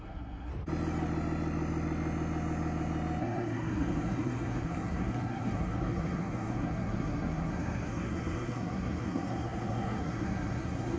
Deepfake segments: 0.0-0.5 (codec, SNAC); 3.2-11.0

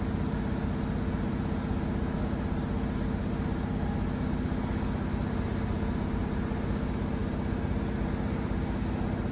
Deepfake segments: none

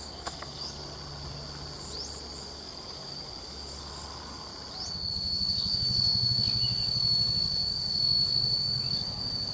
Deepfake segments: 0.0-0.8 (codec, DAC); 2.4-4.5; 5.1-9.5